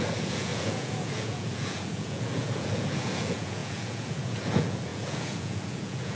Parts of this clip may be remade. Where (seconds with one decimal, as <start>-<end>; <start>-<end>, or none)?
0.0-6.2